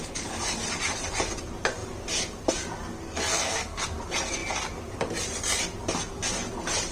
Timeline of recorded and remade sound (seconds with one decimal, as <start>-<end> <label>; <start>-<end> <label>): 0.0-3.3 recorded; 3.3-3.8 remade; 3.8-6.9 recorded